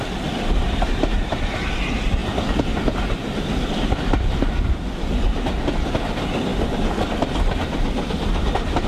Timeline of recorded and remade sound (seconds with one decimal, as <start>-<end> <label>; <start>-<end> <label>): 0.0-8.9 recorded